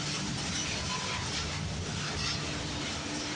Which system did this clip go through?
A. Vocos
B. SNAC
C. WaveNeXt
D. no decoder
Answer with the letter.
D